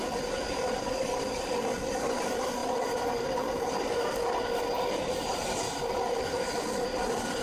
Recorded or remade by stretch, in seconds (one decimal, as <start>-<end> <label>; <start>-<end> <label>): 0.0-7.4 recorded